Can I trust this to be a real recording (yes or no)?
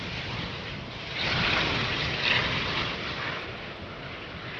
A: yes